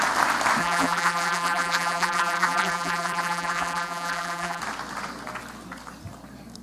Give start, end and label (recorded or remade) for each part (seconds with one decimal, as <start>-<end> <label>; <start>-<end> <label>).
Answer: 0.0-0.6 recorded; 0.6-4.6 remade; 4.6-6.6 recorded